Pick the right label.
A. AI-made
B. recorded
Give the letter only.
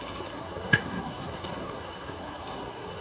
A